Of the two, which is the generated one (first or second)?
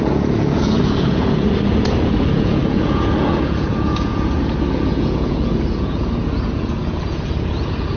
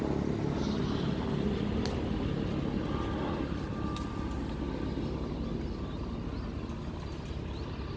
first